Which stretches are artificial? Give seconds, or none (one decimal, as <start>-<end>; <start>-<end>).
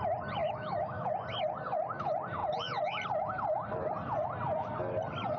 0.4-1.1